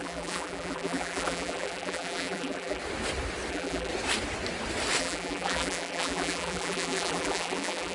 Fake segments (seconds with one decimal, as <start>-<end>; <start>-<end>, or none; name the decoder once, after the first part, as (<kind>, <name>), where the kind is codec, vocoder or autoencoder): 0.0-2.8 (vocoder, BigVGAN v2); 3.5-3.9; 5.0-7.9